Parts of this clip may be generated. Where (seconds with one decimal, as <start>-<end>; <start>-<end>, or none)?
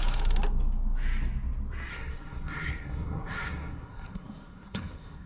1.9-5.3